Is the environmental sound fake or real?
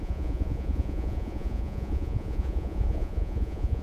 fake